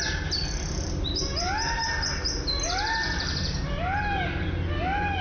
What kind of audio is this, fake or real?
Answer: real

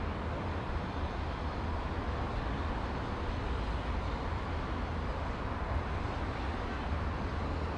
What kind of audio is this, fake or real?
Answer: real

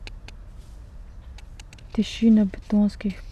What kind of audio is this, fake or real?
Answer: real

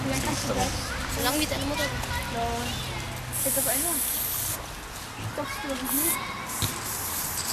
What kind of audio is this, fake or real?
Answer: real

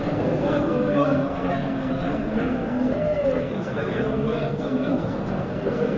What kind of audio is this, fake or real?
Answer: fake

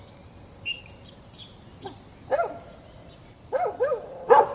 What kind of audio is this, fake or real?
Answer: real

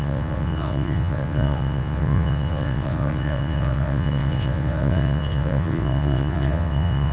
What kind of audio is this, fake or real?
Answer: fake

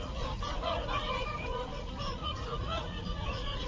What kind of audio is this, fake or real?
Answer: fake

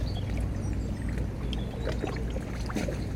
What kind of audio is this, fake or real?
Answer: real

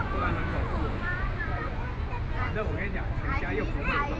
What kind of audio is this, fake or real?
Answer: fake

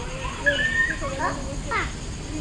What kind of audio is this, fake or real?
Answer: real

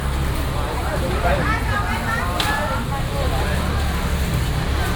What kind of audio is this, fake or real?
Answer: real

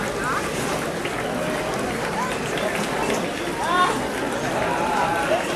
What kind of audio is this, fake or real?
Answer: real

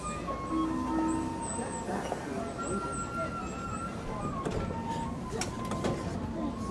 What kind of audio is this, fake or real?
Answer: real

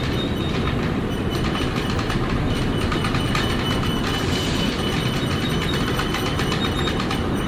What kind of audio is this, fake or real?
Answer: real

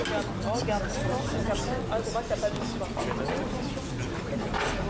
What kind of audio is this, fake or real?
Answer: real